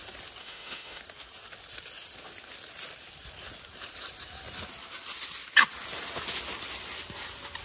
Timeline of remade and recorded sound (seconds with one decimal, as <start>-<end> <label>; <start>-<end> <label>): 0.0-0.4 recorded; 0.4-1.0 remade; 1.0-7.6 recorded